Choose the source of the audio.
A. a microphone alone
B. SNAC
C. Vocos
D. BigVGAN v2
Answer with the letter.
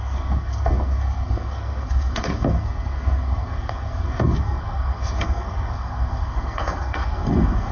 B